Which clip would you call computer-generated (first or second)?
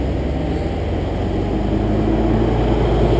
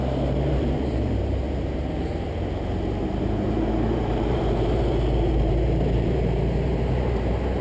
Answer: second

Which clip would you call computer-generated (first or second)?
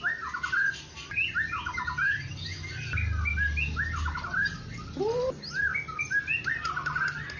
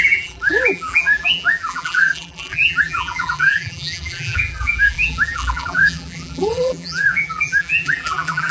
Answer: second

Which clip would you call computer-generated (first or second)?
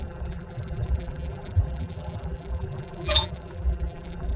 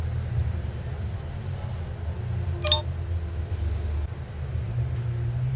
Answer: first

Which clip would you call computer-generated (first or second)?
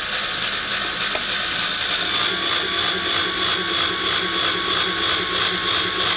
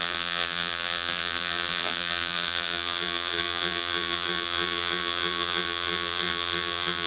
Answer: second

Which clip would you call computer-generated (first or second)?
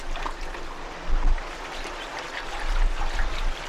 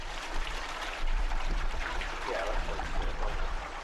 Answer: second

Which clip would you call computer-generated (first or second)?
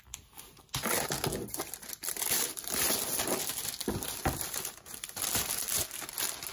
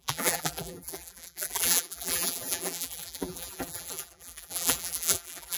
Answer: second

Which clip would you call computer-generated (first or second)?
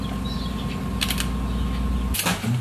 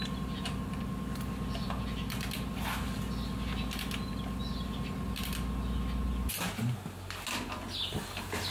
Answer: first